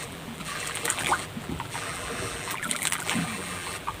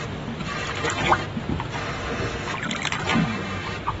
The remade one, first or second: first